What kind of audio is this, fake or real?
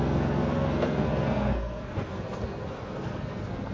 fake